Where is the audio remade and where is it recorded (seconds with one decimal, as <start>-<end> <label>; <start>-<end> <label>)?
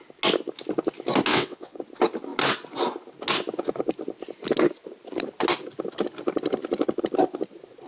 0.0-1.3 recorded; 1.3-1.8 remade; 1.8-7.9 recorded